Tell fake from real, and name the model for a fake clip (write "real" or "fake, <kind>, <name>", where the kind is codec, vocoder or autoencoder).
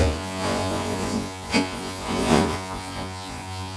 fake, vocoder, Vocos